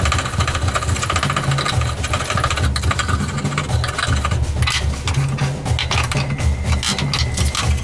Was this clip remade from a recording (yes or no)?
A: no